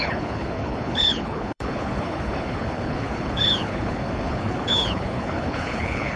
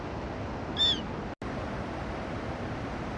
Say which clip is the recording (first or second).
second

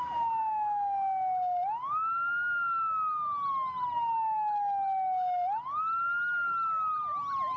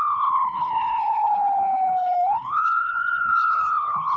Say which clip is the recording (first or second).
first